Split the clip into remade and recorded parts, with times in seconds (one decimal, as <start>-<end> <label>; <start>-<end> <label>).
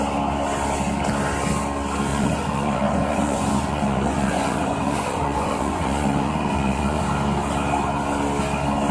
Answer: 0.0-2.1 recorded; 2.1-7.0 remade; 7.0-8.9 recorded